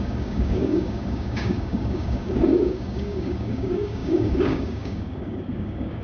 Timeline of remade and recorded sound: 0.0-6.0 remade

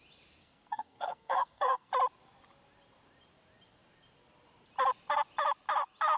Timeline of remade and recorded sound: 0.0-0.4 recorded; 0.4-1.9 remade; 1.9-6.2 recorded

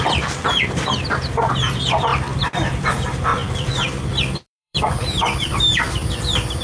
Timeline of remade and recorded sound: 0.0-6.6 remade